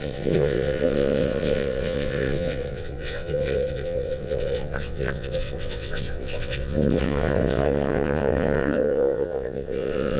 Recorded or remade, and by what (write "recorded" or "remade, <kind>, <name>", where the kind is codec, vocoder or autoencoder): remade, vocoder, WaveNeXt